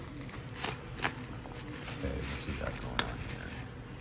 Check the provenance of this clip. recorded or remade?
recorded